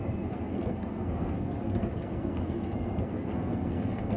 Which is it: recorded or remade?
remade